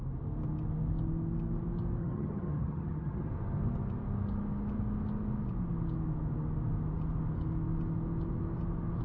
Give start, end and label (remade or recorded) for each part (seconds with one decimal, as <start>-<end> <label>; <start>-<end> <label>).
0.0-2.0 recorded; 2.0-3.3 remade; 3.3-9.0 recorded